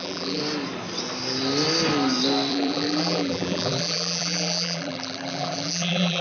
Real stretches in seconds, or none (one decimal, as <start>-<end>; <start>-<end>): 0.4-2.5